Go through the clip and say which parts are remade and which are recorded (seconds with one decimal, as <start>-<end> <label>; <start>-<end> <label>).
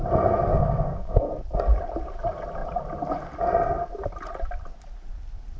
0.0-0.5 recorded; 0.5-1.3 remade; 1.3-5.6 recorded